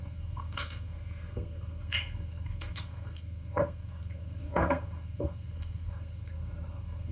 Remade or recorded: remade